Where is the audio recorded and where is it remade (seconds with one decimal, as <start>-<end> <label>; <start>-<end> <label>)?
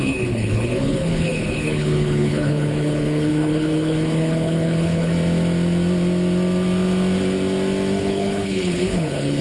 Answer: 0.0-5.1 remade; 5.1-8.0 recorded; 8.0-9.4 remade